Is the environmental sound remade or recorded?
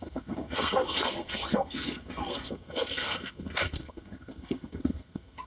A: remade